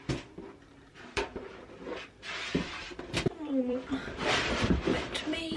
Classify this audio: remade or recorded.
remade